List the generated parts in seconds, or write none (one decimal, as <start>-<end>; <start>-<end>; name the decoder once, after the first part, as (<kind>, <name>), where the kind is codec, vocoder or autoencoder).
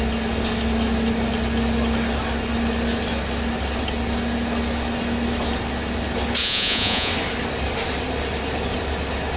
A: 6.4-7.1 (vocoder, Vocos)